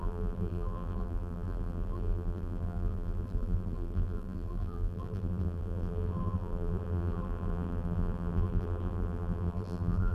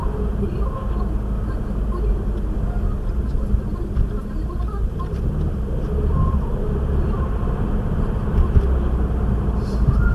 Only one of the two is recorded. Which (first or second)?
second